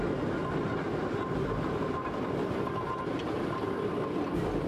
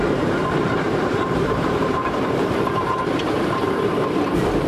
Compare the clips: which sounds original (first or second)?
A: first